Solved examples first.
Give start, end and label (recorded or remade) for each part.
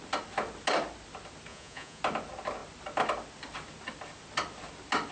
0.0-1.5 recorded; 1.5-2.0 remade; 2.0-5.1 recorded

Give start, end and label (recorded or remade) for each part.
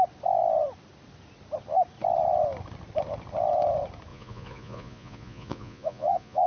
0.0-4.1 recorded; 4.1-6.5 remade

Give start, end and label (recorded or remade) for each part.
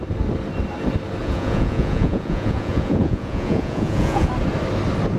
0.0-1.2 recorded; 1.2-4.3 remade; 4.3-5.2 recorded